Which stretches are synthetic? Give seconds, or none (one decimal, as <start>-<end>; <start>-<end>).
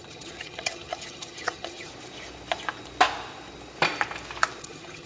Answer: 0.0-1.9; 4.6-5.1